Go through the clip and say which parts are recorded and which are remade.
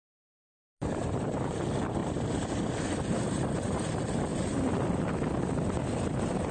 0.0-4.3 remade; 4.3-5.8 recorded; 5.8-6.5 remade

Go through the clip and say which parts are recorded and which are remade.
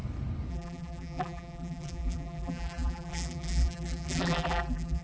0.0-0.5 recorded; 0.5-5.0 remade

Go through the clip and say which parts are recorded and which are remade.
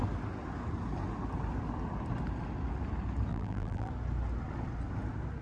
0.0-3.3 recorded; 3.3-3.9 remade; 3.9-5.4 recorded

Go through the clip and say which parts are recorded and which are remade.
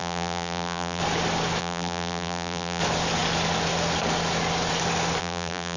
0.0-1.0 remade; 1.0-1.6 recorded; 1.6-2.8 remade; 2.8-5.2 recorded; 5.2-5.8 remade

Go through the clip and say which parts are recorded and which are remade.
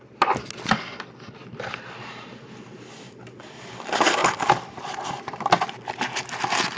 0.0-1.4 recorded; 1.4-3.7 remade; 3.7-4.2 recorded; 4.2-5.6 remade; 5.6-6.8 recorded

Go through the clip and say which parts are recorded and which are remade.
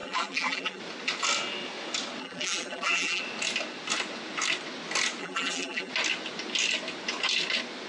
0.0-0.8 remade; 0.8-2.2 recorded; 2.2-3.2 remade; 3.2-5.2 recorded; 5.2-5.9 remade; 5.9-7.9 recorded